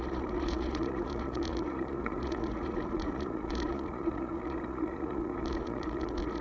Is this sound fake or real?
fake